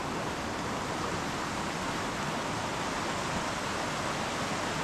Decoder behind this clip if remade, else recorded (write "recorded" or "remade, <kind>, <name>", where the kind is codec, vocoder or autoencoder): recorded